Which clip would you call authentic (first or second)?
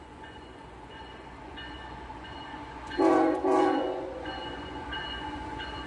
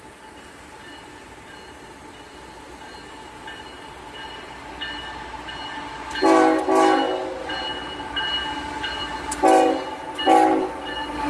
second